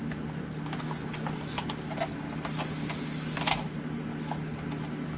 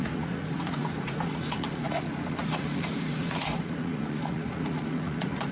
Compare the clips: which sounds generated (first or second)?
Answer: second